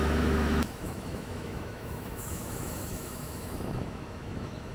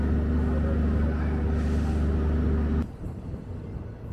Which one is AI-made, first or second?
first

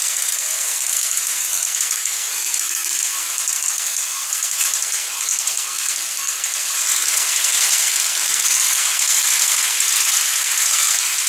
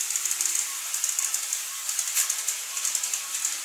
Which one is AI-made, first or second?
first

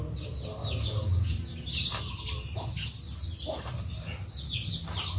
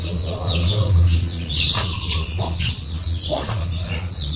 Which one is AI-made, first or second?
second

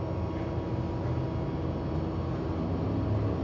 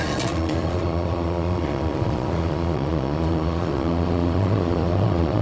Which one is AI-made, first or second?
second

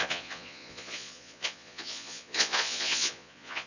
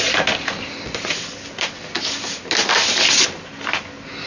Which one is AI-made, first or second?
first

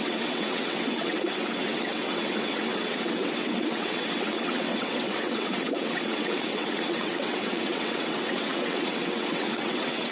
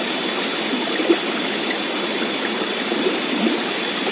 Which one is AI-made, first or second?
first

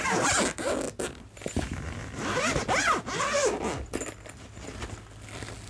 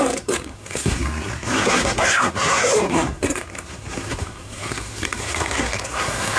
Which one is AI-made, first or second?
second